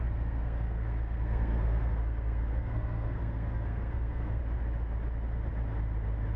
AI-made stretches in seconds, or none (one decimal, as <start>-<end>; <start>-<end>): 0.0-4.4